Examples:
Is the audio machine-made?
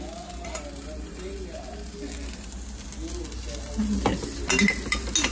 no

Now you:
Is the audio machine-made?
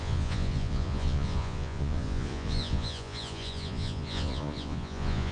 yes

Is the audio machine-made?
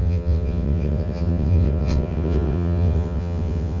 yes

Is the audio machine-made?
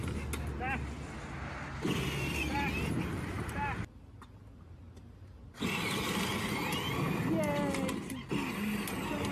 no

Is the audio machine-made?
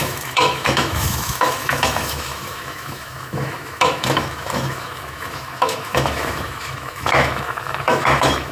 yes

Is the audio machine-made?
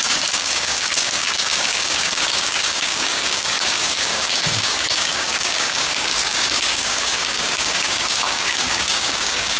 yes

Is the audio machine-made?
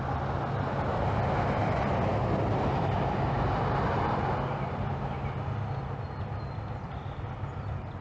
no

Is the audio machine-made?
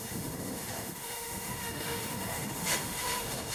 yes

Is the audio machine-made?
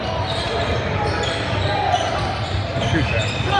no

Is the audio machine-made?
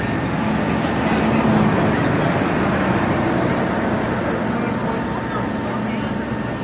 no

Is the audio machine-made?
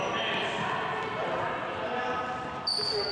no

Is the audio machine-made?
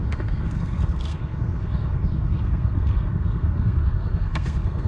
yes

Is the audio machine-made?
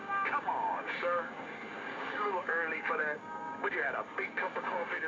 yes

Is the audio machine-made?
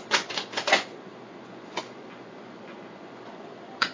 yes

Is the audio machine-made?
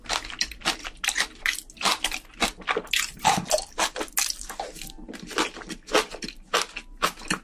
no